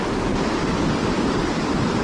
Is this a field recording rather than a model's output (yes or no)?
yes